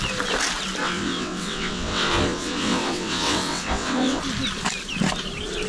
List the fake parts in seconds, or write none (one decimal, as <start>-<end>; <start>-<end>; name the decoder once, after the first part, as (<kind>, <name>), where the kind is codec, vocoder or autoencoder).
0.8-4.2 (vocoder, WaveNeXt)